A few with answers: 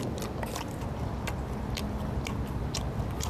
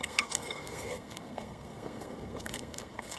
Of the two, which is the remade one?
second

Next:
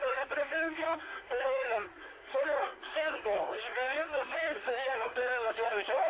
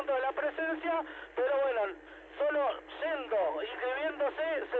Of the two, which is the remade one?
first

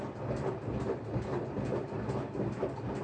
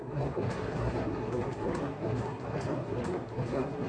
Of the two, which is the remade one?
second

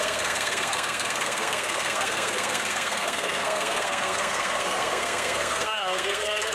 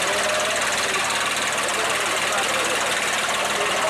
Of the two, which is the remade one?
first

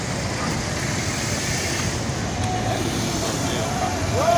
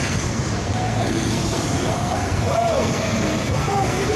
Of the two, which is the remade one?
second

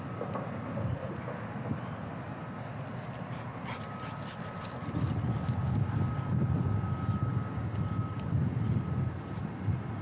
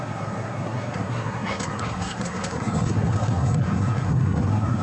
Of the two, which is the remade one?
second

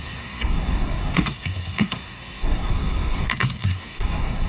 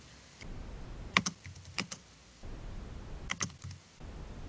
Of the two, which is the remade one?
first